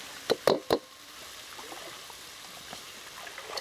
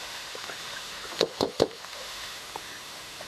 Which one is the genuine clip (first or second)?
first